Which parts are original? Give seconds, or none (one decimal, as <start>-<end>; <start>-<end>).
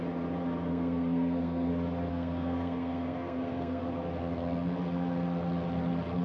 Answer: 0.0-0.7; 1.7-2.1; 3.8-6.2